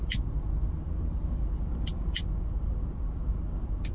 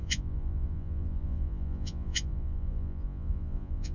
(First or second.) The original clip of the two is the first